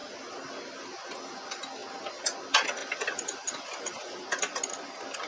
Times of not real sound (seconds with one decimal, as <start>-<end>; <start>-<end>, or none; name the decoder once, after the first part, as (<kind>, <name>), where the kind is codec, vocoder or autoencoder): none